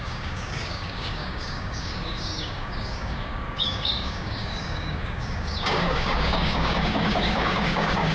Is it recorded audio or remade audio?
remade